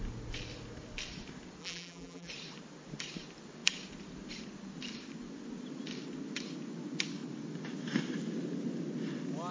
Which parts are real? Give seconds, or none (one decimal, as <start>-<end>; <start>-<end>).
0.0-1.6; 2.3-9.5